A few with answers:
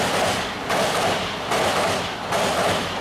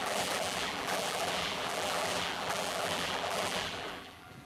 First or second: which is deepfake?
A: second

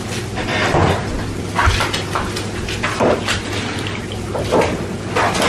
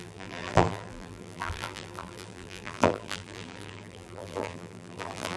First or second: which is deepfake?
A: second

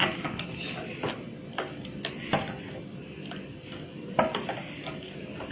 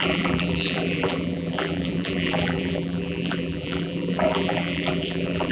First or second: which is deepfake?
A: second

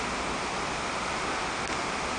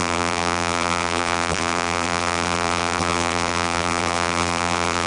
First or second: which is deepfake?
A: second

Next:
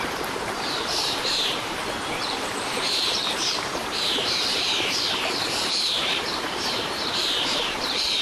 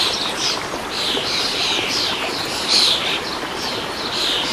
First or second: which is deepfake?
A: first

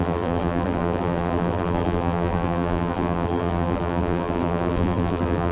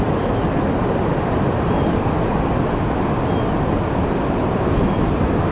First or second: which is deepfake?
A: first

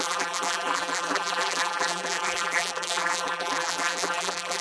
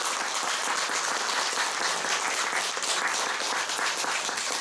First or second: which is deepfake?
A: first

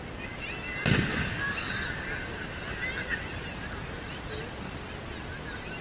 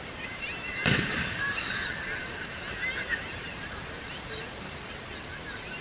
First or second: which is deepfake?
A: second